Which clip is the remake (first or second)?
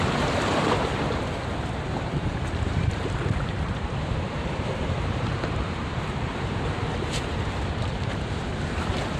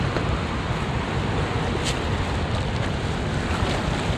first